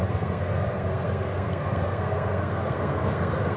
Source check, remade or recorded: remade